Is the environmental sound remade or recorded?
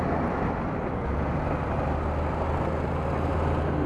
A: recorded